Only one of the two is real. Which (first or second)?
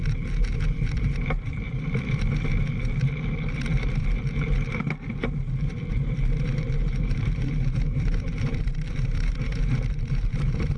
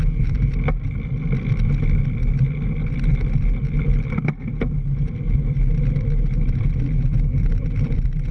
second